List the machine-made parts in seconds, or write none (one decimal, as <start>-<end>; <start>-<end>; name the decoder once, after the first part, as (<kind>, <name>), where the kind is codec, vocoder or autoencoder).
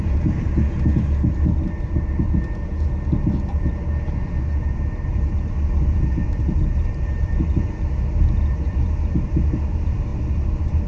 none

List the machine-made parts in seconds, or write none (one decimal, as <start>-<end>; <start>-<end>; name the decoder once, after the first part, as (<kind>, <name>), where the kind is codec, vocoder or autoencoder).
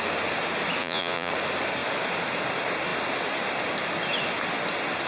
0.8-1.3 (vocoder, Vocos)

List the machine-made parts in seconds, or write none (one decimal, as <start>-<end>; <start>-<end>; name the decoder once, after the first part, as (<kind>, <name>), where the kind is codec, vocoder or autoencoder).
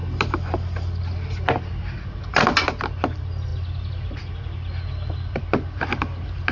none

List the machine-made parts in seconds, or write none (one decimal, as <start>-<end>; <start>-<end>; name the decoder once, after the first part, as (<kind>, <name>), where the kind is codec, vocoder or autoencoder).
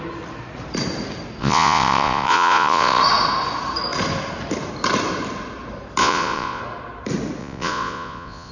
1.4-3.0 (vocoder, Vocos); 6.0-6.6; 7.4-8.5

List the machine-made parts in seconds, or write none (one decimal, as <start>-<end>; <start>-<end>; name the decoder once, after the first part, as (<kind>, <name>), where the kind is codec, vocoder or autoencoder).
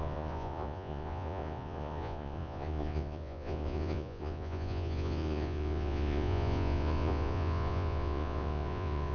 0.0-9.1 (vocoder, Vocos)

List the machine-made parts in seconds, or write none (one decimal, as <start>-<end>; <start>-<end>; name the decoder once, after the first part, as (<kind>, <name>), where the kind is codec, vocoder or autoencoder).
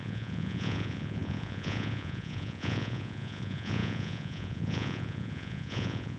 0.0-6.2 (vocoder, Vocos)